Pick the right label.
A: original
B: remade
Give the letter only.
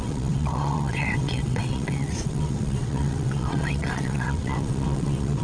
B